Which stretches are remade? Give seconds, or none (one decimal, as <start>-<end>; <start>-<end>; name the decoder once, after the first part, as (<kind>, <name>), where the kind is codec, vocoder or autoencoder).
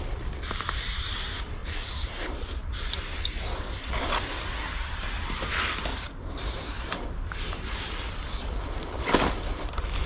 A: 0.0-10.1 (vocoder, BigVGAN v2)